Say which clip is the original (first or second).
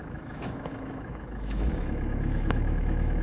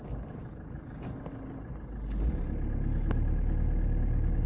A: second